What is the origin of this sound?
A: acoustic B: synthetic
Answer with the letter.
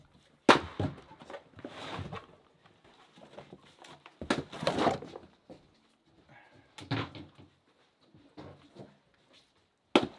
A